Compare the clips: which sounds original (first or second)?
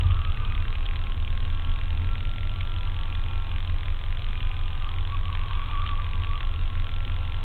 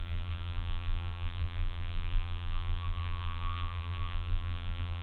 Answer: first